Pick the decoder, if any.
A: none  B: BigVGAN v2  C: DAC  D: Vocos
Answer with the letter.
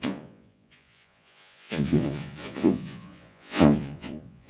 D